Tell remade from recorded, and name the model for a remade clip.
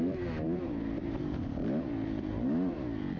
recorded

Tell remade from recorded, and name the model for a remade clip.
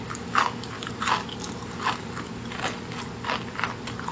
recorded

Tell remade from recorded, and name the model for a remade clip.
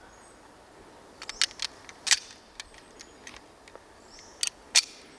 recorded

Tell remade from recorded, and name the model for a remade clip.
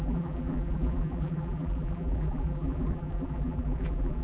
remade, vocoder, BigVGAN v2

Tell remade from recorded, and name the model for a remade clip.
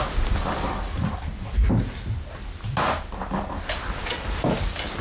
recorded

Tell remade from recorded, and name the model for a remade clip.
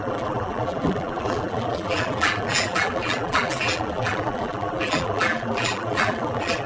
remade, vocoder, BigVGAN v2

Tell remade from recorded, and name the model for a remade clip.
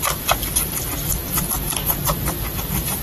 recorded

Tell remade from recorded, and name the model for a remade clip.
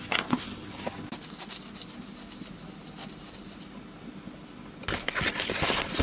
recorded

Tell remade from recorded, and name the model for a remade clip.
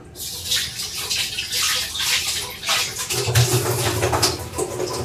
recorded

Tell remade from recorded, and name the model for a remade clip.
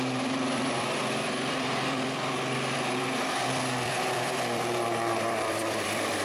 remade, vocoder, BigVGAN v2